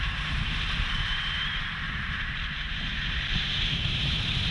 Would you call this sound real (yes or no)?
no